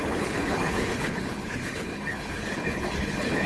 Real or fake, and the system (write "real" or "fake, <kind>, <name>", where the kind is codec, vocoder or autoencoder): fake, codec, HILCodec